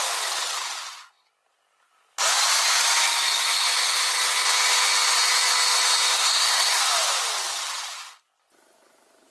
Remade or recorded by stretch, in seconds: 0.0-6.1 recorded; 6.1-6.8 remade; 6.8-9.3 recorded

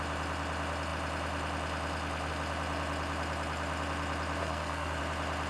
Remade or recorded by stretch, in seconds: 0.0-4.4 recorded; 4.4-5.0 remade; 5.0-5.5 recorded

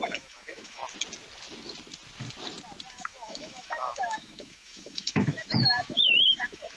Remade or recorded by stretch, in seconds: 0.0-0.8 remade; 0.8-2.9 recorded; 2.9-6.8 remade

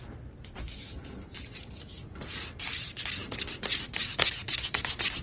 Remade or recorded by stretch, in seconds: 0.0-5.2 recorded